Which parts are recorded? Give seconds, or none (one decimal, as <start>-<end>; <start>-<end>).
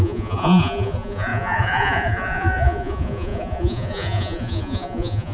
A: none